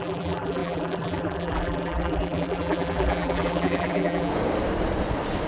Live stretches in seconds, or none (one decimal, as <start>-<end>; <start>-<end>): 4.3-5.5